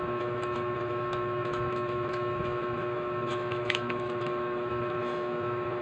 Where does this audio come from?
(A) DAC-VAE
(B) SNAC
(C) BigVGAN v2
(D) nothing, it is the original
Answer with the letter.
A